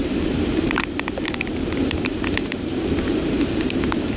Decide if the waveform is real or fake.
fake